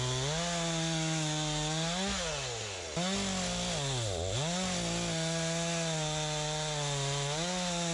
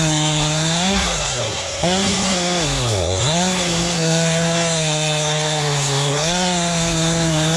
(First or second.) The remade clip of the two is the second